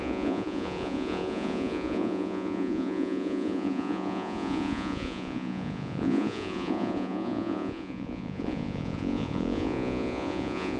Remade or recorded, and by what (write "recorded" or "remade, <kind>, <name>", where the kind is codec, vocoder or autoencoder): remade, vocoder, Vocos